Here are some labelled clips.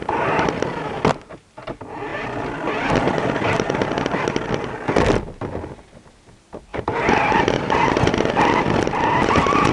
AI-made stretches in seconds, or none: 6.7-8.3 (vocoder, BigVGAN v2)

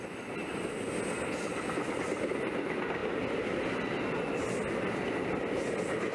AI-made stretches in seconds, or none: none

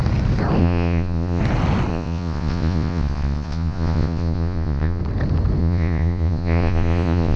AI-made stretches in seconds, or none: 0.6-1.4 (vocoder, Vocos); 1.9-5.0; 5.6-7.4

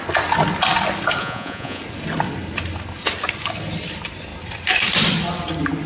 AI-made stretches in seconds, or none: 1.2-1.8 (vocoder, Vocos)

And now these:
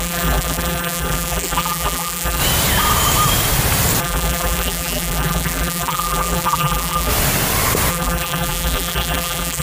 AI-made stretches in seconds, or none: 0.0-2.4 (vocoder, BigVGAN v2); 4.0-7.1; 7.9-9.6

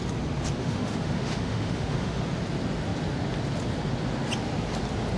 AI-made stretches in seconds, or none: 0.6-2.2 (autoencoder, DAC-VAE)

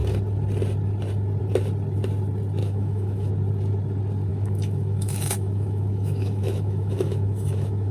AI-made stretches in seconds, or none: 2.6-3.3 (autoencoder, DAC-VAE); 4.3-7.9